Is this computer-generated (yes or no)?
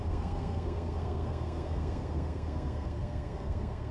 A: yes